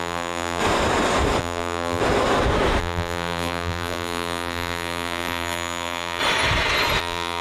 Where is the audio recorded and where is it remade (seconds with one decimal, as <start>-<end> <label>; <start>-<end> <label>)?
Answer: 0.0-0.6 remade; 0.6-1.4 recorded; 1.4-2.0 remade; 2.0-2.8 recorded; 2.8-6.2 remade; 6.2-7.0 recorded; 7.0-7.4 remade